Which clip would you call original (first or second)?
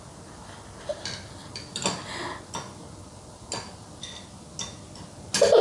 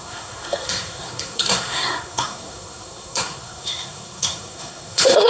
first